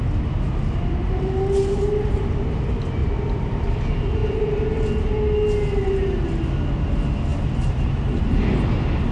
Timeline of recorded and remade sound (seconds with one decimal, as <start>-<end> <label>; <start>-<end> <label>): 0.0-3.0 recorded; 3.0-3.7 remade; 3.7-4.2 recorded; 4.2-4.9 remade; 4.9-7.3 recorded; 7.3-8.5 remade; 8.5-9.1 recorded